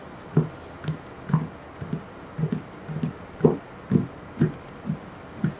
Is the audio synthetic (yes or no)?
no